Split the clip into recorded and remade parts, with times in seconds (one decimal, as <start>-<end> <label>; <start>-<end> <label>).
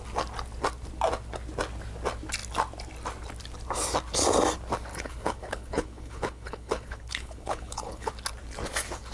0.0-4.9 recorded; 4.9-8.1 remade; 8.1-9.1 recorded